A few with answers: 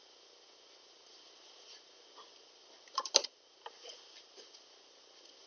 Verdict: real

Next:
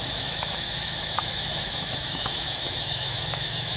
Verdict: fake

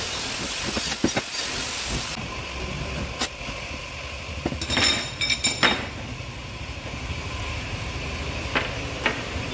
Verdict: real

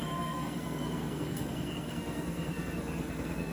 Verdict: fake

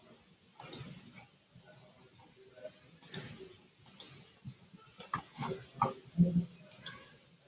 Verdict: real